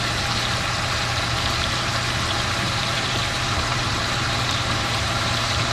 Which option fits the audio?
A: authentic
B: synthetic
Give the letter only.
B